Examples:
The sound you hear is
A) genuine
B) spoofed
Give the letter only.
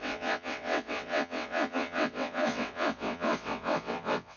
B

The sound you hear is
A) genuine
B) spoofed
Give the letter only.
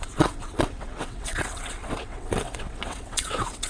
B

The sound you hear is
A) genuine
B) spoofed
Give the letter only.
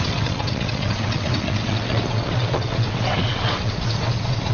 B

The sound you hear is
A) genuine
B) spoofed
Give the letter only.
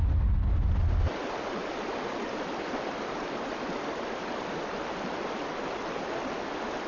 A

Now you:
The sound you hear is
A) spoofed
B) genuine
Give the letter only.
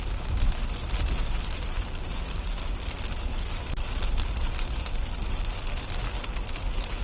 B